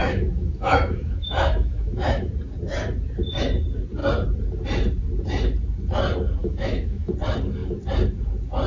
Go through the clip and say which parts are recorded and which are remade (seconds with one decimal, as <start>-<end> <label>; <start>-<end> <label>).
0.0-2.3 remade; 2.3-6.4 recorded; 6.4-7.1 remade; 7.1-8.7 recorded